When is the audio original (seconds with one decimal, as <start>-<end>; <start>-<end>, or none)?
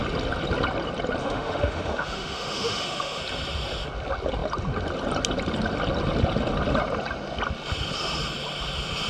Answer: 0.0-1.2; 3.2-9.1